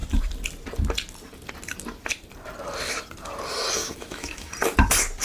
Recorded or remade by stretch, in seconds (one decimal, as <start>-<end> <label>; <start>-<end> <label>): 0.0-3.8 recorded; 3.8-4.5 remade; 4.5-5.2 recorded